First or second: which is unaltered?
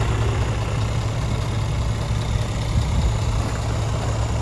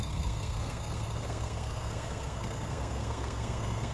first